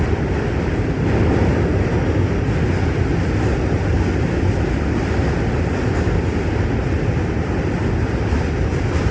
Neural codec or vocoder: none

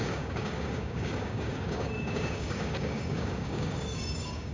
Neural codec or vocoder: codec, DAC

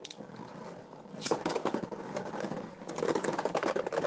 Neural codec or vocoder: codec, DAC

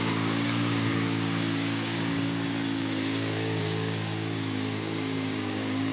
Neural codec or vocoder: codec, DAC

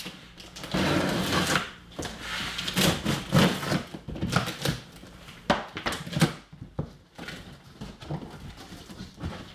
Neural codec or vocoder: none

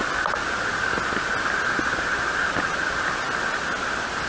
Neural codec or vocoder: none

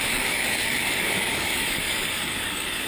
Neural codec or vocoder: codec, DAC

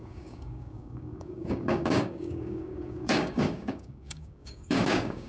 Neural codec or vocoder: codec, DAC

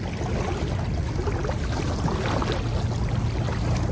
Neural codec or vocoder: none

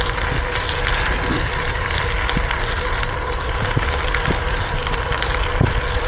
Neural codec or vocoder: none